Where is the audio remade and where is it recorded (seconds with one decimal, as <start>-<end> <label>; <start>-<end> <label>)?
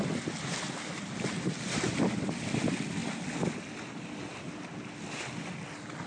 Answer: 0.0-6.1 recorded